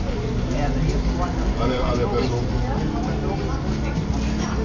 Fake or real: real